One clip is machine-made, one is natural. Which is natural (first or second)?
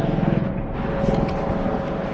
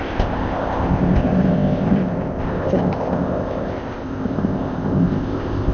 first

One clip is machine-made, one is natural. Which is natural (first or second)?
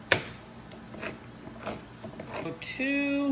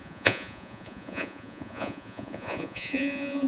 first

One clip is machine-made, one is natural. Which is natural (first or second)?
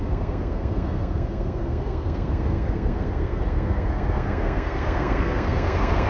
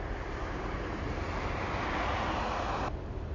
second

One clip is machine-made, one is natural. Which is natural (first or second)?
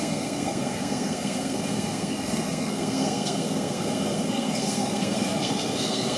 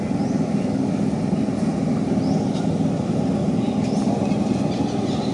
second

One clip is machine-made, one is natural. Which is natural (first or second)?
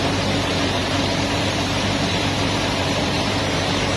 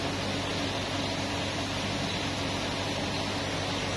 second